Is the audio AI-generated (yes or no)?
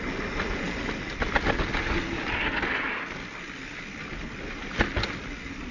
no